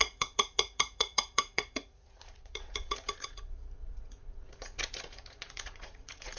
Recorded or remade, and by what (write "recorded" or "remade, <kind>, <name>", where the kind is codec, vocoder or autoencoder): remade, vocoder, Vocos